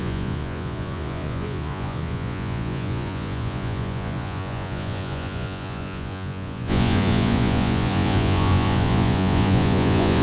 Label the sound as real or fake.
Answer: fake